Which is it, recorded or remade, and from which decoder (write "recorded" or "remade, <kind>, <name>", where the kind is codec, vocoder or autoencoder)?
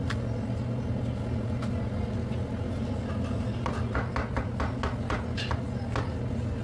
recorded